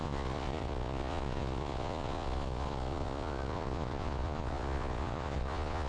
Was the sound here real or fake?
fake